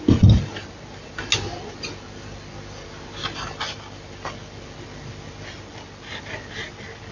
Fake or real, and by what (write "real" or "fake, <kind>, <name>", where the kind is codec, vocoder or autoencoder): real